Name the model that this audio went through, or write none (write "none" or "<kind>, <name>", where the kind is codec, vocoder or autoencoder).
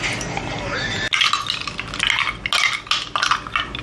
none